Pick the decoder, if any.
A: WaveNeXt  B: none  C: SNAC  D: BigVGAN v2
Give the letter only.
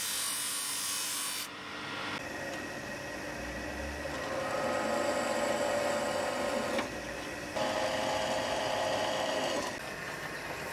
B